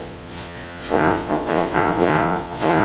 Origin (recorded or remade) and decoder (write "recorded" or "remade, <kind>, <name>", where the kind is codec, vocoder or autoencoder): remade, vocoder, Vocos